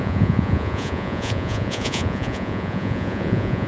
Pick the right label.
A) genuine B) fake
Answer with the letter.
B